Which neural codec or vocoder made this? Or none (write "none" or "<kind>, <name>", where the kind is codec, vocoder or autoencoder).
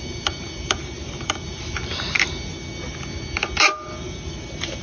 none